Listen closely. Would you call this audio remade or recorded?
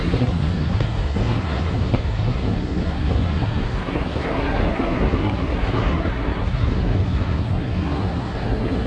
remade